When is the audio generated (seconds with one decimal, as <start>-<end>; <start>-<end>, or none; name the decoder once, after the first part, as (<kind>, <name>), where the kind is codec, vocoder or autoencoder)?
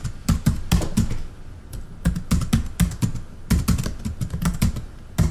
none